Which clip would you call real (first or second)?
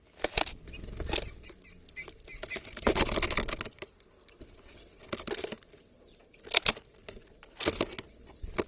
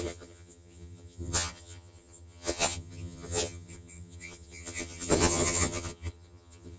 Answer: first